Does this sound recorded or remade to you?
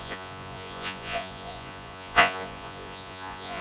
remade